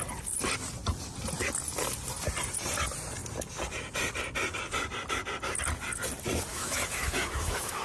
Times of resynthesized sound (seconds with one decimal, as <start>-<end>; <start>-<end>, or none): 6.5-7.8